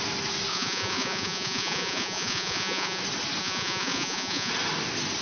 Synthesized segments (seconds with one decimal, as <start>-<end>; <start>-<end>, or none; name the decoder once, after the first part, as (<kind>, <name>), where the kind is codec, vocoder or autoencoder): 0.5-3.0 (vocoder, Vocos); 3.4-4.5